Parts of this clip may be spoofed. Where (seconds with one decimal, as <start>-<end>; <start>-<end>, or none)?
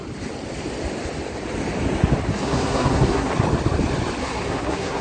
2.3-3.3; 4.2-5.0